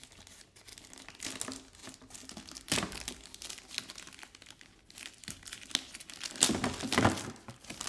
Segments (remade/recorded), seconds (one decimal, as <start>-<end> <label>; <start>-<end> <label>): 0.0-7.9 recorded